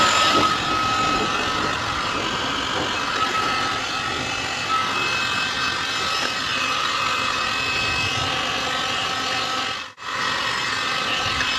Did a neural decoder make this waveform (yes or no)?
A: no